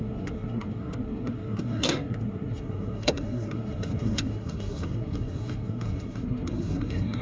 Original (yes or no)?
no